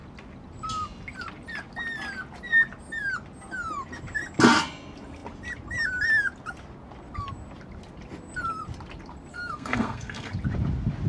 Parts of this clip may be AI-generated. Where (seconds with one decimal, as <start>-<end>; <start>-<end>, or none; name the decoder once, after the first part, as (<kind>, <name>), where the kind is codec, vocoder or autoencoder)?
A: 9.3-10.3 (codec, SNAC)